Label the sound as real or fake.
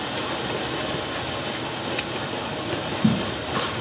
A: real